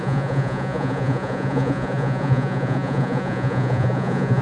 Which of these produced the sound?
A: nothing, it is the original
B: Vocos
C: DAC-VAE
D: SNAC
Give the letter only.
B